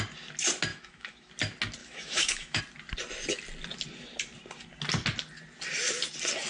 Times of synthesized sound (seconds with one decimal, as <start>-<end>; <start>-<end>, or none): 0.7-1.3; 1.8-2.6